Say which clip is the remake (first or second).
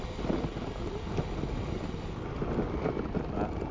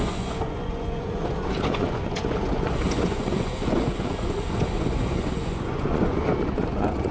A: second